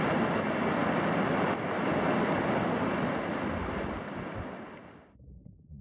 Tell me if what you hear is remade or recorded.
recorded